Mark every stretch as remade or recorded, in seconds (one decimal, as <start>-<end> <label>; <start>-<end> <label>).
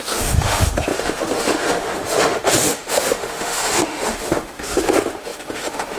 0.0-6.0 remade